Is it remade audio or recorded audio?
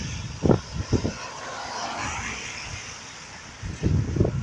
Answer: recorded